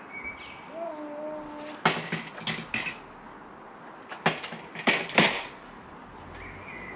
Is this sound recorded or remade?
recorded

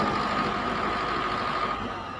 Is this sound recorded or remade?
recorded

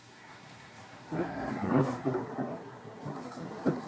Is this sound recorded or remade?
remade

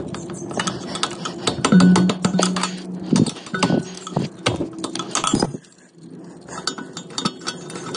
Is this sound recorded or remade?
recorded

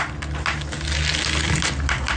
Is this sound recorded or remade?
recorded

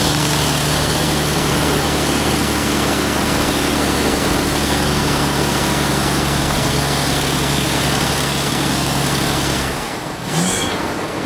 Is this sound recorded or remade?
remade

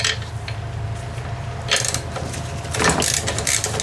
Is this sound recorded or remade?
recorded